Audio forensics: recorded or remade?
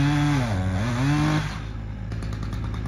recorded